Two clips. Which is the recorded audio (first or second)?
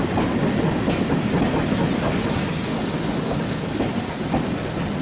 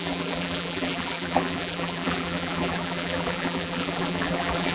first